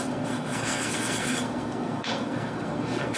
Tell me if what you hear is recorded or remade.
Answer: remade